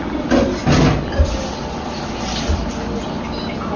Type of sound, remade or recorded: recorded